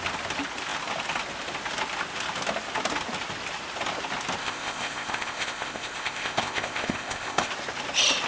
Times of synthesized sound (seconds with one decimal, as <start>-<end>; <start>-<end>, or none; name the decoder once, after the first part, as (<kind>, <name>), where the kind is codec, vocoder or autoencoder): 4.4-7.5 (codec, ZipCodec)